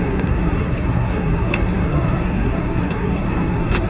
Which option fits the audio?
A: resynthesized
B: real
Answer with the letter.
A